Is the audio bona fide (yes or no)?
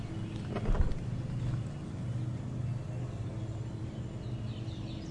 yes